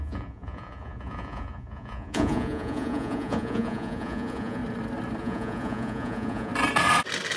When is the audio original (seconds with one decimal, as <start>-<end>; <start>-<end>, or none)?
4.6-5.2; 6.5-7.4